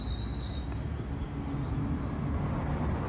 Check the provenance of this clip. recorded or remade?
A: recorded